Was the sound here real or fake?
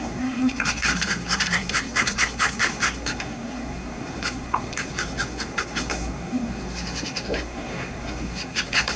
fake